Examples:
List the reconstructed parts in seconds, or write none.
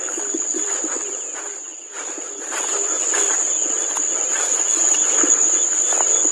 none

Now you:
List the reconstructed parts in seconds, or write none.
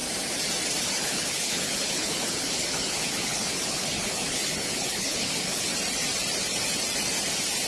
0.8-5.7 (codec, HILCodec)